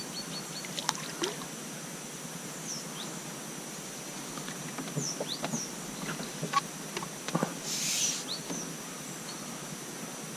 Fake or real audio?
real